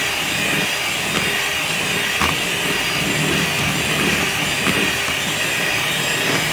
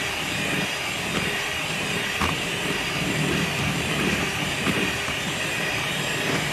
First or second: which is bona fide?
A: first